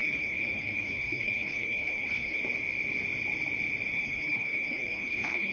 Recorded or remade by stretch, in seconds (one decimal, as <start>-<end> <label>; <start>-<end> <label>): 0.0-2.4 remade; 2.4-3.9 recorded; 3.9-5.5 remade